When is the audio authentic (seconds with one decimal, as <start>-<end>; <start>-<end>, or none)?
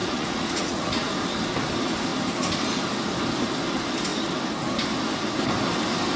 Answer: 1.1-6.2